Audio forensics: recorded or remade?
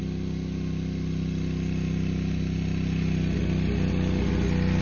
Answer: recorded